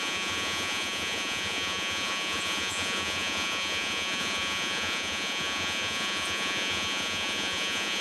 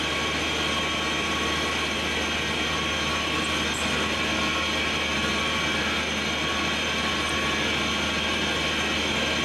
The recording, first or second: second